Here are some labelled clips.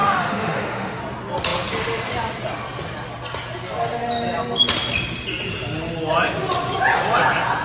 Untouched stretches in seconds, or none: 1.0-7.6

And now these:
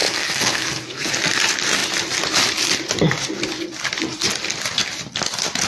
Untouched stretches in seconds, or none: 1.1-5.7

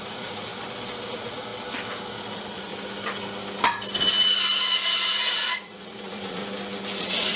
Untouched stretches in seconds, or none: 0.5-1.1; 1.5-2.1; 2.7-5.1; 6.4-7.0

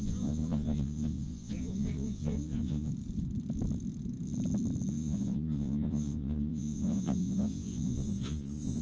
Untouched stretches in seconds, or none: 2.9-4.9

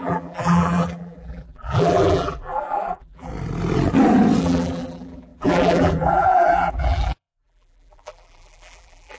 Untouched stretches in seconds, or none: 3.3-4.4